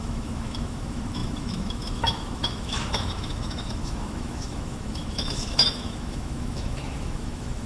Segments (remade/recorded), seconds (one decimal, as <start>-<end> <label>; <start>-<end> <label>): 0.0-7.7 remade